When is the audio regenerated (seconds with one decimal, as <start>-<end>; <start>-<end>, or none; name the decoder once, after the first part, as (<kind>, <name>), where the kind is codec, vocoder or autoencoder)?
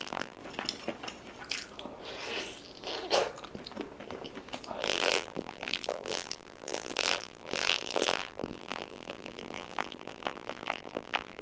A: 0.0-0.4 (vocoder, BigVGAN v2); 4.8-11.4